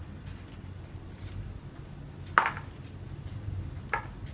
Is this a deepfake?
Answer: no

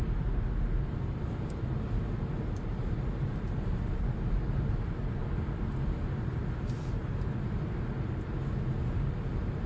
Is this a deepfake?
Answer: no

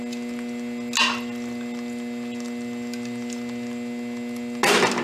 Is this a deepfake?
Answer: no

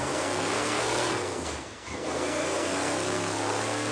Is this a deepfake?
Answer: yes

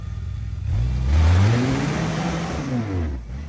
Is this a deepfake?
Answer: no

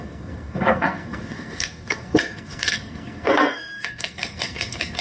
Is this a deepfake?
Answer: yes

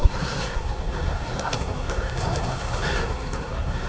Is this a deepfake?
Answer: yes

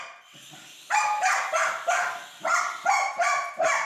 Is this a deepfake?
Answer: no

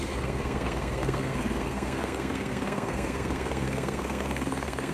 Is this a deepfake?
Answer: yes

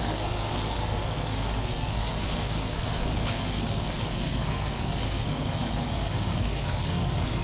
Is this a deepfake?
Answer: yes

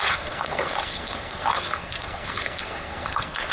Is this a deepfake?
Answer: yes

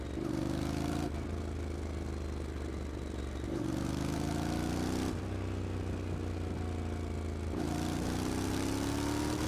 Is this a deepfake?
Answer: no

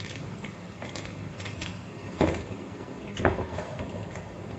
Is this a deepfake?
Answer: yes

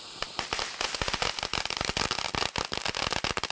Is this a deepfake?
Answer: no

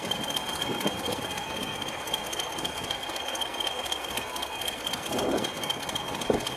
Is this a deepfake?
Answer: yes